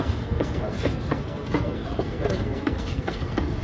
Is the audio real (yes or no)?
no